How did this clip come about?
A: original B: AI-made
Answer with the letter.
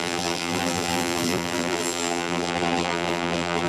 B